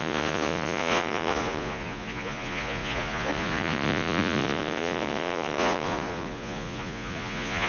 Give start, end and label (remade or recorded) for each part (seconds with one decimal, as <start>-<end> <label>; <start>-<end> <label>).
0.0-7.7 remade